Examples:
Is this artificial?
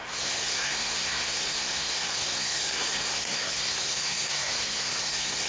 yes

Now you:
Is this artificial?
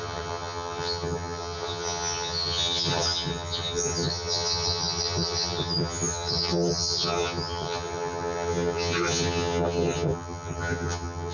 yes